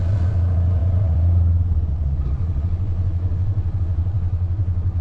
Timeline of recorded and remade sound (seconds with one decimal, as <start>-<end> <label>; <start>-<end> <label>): 0.0-5.0 remade